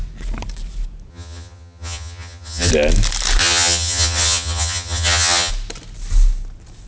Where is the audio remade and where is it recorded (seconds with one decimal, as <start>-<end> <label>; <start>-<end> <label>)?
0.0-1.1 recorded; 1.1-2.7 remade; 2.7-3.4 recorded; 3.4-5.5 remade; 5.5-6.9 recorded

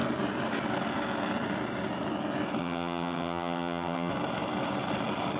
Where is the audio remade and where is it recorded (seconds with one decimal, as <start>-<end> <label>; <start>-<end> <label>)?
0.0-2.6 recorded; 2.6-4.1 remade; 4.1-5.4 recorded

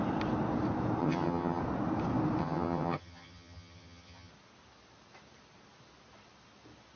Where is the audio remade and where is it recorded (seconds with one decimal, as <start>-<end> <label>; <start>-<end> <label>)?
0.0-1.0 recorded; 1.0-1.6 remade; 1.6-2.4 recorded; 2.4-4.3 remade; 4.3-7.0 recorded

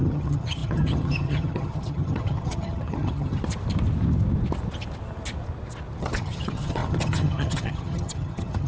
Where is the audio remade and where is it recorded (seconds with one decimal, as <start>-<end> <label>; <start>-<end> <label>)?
0.0-3.4 remade; 3.4-6.0 recorded; 6.0-8.7 remade

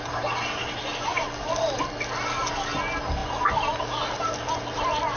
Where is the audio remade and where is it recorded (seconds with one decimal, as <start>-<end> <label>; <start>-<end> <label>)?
0.0-5.2 recorded